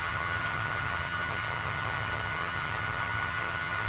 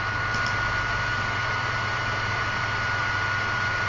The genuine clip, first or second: second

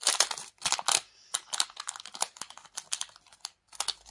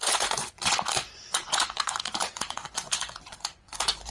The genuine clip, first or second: first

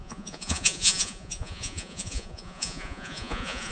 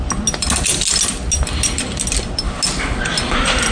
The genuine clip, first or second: second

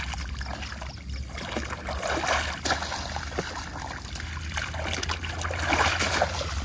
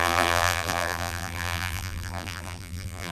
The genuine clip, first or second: first